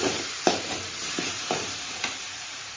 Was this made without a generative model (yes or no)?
no